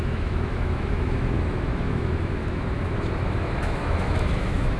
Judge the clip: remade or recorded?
remade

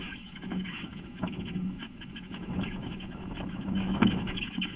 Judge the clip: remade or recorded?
remade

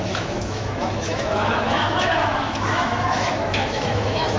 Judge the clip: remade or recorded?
remade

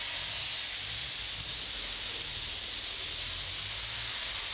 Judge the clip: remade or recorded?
recorded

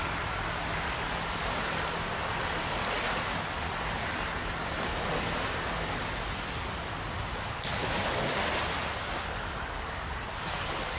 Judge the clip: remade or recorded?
recorded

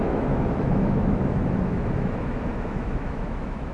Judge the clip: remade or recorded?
remade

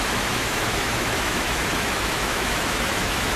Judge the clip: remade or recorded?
remade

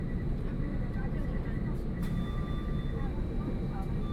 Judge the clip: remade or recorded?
recorded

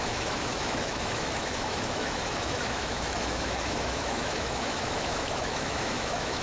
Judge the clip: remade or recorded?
remade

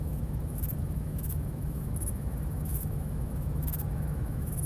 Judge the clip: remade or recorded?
remade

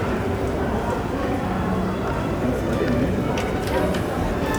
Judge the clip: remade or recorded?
recorded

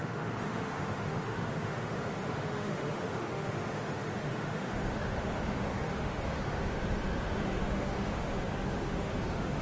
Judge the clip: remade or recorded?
remade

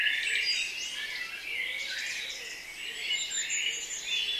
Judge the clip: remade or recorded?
recorded